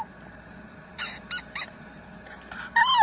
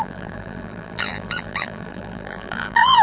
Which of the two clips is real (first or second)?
first